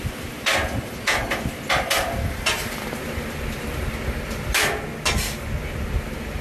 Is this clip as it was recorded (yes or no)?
yes